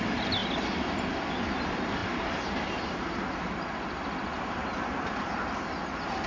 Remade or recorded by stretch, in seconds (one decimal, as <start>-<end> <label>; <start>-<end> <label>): 0.0-6.3 recorded